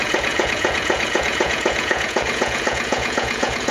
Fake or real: fake